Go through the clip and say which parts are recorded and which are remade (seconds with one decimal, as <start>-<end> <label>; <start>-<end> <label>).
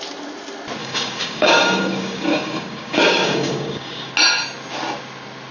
0.0-0.8 recorded; 0.8-4.1 remade; 4.1-5.5 recorded